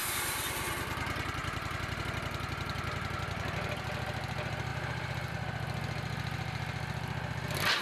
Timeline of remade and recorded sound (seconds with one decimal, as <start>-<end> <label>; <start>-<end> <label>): 0.0-0.7 remade; 0.7-1.4 recorded; 1.4-2.0 remade; 2.0-4.7 recorded; 4.7-5.3 remade; 5.3-7.8 recorded